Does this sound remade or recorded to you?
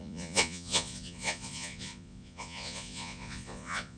remade